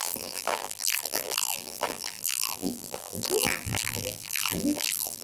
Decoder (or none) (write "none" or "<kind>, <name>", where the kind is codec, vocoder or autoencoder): vocoder, BigVGAN v2